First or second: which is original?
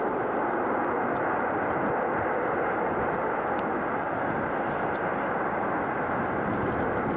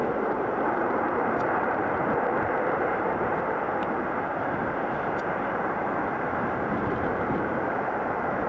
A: first